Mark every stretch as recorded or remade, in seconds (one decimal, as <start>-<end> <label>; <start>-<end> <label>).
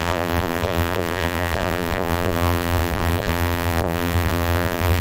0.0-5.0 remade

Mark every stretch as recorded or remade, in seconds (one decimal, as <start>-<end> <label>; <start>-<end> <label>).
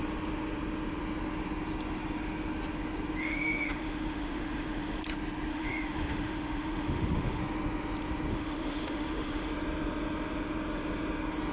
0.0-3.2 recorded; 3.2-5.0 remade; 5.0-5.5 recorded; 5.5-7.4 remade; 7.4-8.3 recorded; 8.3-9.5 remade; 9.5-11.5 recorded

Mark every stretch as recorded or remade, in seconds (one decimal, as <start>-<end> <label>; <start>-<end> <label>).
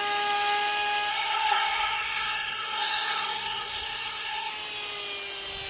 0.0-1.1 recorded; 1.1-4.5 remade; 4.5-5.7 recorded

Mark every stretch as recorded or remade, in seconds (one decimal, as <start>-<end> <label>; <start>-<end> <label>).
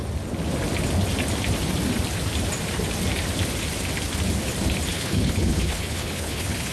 0.0-4.9 recorded; 4.9-6.7 remade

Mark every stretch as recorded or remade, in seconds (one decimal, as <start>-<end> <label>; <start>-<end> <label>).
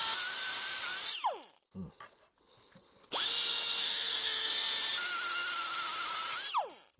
0.0-3.8 recorded; 3.8-4.5 remade; 4.5-7.0 recorded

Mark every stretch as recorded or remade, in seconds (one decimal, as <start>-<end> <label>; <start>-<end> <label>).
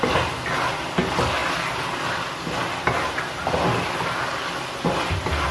0.0-5.5 recorded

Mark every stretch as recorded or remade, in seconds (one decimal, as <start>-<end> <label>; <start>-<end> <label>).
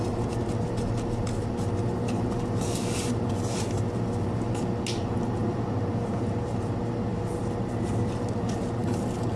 0.0-9.4 recorded